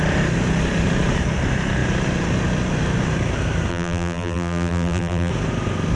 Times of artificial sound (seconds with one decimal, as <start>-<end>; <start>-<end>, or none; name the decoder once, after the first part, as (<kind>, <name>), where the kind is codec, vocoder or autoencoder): 3.7-5.3 (vocoder, BigVGAN v2)